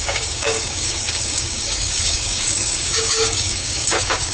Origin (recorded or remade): remade